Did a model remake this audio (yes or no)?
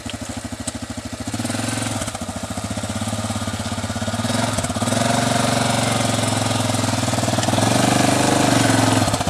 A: no